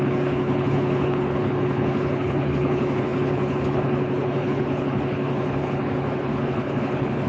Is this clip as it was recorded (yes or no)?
no